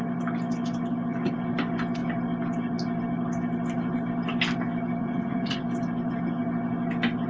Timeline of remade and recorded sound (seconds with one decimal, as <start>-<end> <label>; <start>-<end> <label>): 0.0-5.0 recorded; 5.0-5.6 remade; 5.6-7.3 recorded